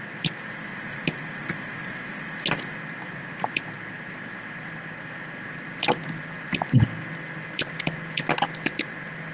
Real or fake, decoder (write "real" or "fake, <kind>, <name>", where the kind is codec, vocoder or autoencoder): real